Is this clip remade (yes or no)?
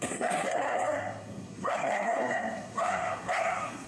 yes